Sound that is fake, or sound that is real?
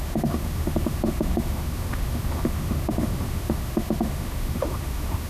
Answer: fake